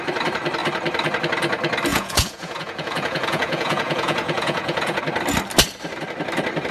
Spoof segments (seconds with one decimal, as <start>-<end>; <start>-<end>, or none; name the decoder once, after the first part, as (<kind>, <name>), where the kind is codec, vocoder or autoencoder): 1.9-5.0 (vocoder, Vocos)